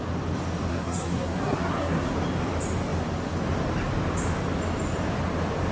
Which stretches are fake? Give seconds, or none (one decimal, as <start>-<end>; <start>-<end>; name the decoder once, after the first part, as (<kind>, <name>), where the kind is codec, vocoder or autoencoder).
0.7-2.1 (codec, SNAC)